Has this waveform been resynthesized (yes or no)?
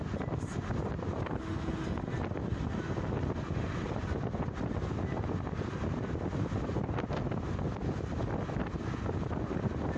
no